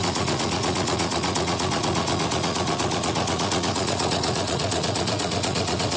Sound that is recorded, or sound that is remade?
remade